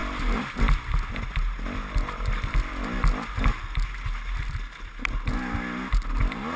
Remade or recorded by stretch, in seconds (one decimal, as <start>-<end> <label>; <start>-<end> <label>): 0.0-6.6 recorded